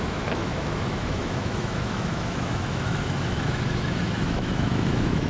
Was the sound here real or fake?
fake